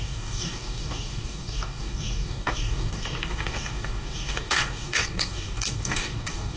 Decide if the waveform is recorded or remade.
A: remade